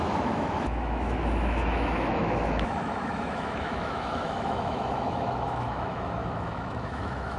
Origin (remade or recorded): remade